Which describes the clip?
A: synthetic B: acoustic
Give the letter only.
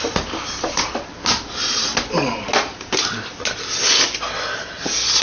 B